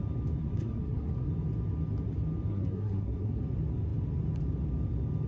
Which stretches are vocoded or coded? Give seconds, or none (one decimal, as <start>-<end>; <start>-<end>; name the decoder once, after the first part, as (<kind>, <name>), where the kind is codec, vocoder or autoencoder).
0.4-1.3 (codec, SNAC); 2.5-3.4